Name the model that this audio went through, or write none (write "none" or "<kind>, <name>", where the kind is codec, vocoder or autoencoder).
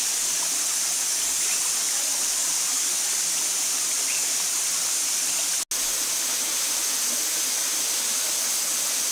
none